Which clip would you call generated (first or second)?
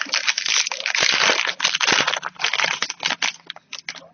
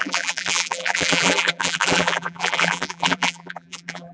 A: second